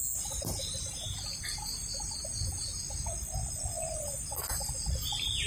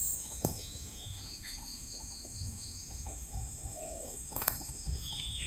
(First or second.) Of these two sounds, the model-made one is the second